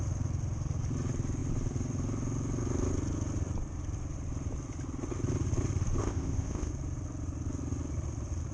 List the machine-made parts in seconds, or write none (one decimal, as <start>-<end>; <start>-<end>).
6.0-6.7